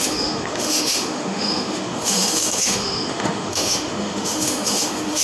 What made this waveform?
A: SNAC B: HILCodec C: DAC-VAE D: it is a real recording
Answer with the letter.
C